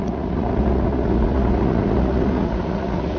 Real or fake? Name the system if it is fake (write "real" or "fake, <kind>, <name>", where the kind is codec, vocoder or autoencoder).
fake, vocoder, Vocos